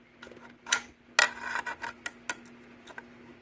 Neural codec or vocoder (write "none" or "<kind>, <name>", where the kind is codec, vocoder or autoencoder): none